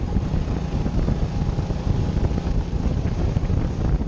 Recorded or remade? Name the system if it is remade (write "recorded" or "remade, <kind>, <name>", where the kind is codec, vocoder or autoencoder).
recorded